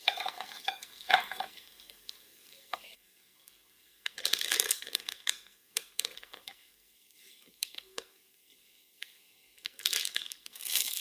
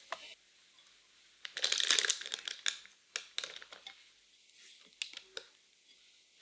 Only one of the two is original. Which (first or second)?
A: second